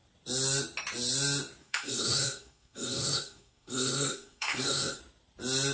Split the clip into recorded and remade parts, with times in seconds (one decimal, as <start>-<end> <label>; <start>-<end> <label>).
0.0-1.6 recorded; 1.6-5.0 remade; 5.0-5.7 recorded